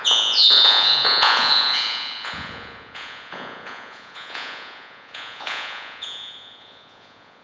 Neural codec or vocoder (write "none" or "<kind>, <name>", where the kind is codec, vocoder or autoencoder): vocoder, Vocos